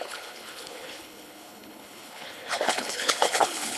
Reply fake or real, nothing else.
fake